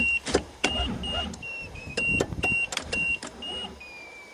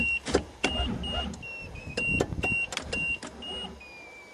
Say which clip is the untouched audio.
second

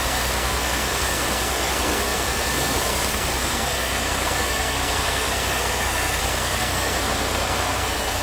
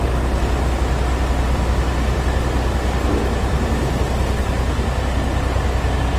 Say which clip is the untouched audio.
second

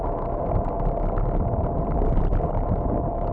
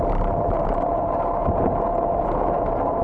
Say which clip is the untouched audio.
first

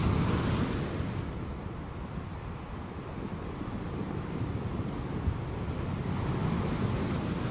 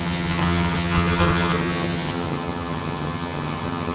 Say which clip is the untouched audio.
first